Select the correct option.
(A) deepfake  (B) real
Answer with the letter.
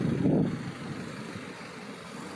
B